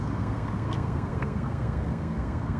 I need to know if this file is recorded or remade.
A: remade